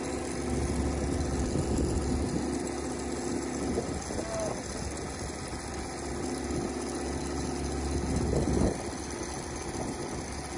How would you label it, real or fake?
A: real